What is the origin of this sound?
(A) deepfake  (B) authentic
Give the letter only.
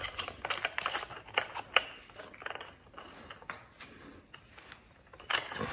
B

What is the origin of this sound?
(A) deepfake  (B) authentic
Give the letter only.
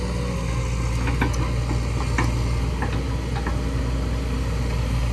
B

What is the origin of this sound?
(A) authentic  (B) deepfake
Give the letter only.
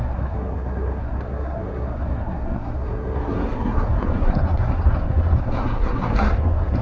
B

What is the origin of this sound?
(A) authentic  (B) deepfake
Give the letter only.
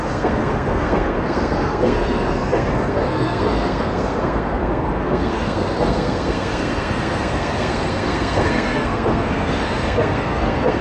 B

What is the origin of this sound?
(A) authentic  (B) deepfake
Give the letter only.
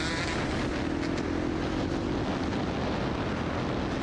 A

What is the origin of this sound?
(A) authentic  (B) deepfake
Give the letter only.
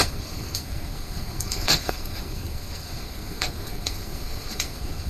B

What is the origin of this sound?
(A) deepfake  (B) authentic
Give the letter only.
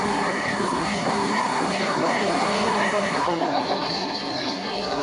A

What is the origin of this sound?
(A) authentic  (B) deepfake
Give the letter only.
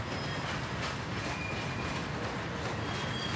A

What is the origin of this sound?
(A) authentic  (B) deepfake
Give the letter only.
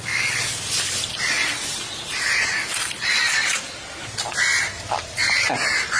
A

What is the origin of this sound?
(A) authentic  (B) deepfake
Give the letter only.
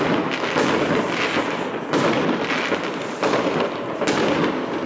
A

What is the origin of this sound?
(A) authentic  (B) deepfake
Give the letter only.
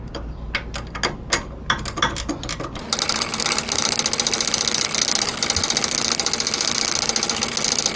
A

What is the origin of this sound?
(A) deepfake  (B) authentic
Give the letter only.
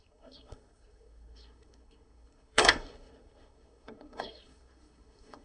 A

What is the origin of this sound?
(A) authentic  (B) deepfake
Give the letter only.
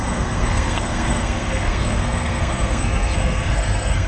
B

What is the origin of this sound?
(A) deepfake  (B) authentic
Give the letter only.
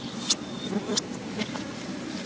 B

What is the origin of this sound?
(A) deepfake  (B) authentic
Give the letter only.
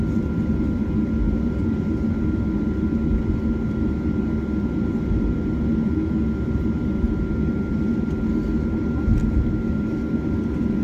B